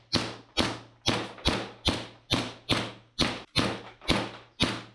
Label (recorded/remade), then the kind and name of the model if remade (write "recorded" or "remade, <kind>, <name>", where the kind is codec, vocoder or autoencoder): recorded